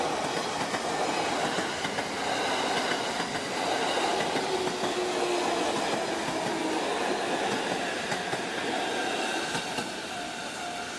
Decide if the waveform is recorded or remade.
recorded